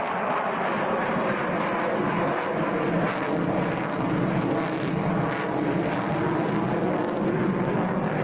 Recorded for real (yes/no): yes